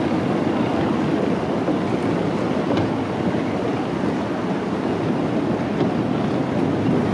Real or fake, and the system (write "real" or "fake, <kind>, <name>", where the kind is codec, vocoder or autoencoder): real